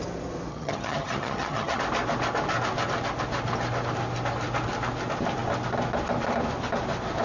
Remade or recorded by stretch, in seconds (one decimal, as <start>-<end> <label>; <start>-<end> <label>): 0.0-0.5 recorded; 0.5-1.8 remade; 1.8-7.2 recorded